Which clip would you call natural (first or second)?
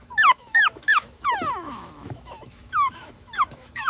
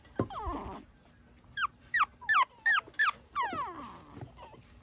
second